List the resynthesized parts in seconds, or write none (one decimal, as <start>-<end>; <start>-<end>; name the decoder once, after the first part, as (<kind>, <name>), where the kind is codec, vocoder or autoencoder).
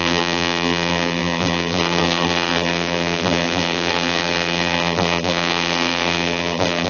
0.0-6.9 (vocoder, BigVGAN v2)